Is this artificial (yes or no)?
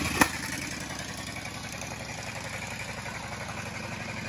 no